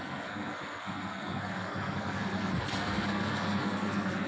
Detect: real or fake fake